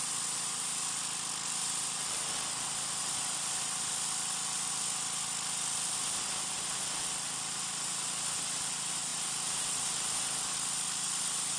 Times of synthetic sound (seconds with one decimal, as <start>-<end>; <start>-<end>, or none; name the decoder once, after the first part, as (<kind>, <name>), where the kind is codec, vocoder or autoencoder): 9.1-9.9 (vocoder, BigVGAN v2)

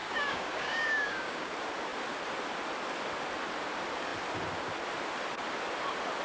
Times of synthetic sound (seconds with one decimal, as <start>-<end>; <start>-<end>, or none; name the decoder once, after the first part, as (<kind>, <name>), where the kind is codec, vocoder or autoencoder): 0.0-1.5 (codec, DAC)

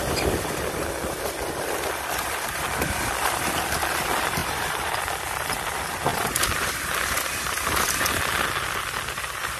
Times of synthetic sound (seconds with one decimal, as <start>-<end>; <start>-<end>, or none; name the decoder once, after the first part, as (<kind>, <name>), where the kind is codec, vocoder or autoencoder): 4.4-5.0 (vocoder, BigVGAN v2); 6.1-6.7

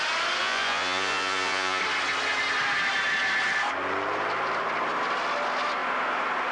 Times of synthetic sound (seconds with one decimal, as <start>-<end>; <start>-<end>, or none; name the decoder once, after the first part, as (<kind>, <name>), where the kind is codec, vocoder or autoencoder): 0.4-1.8 (vocoder, Vocos)